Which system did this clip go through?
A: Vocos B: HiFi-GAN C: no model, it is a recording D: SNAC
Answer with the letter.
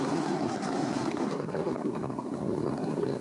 D